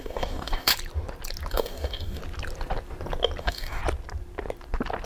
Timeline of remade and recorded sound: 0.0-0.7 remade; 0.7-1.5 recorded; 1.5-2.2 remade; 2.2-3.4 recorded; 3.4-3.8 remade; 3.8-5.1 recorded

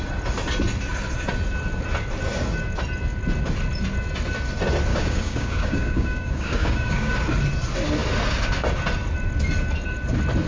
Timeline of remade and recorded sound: 0.0-4.9 recorded; 4.9-7.1 remade; 7.1-10.5 recorded

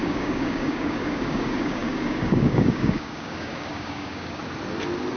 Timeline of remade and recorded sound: 0.0-4.4 remade; 4.4-5.2 recorded

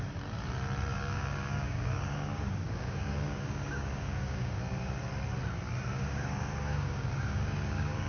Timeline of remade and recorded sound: 0.0-0.9 recorded; 0.9-4.6 remade; 4.6-5.9 recorded; 5.9-8.1 remade

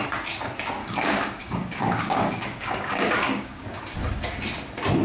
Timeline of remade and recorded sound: 0.0-0.8 recorded; 0.8-3.8 remade; 3.8-5.0 recorded